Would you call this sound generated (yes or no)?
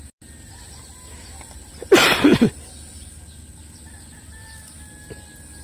no